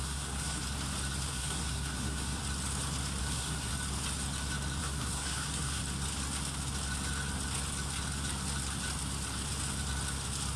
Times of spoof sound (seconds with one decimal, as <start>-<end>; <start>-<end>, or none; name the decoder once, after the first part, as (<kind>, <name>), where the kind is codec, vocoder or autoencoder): 0.0-0.6 (codec, SNAC); 1.3-2.4; 3.2-3.7; 4.8-5.8